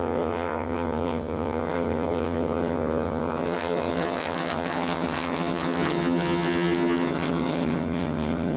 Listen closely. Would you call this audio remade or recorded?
remade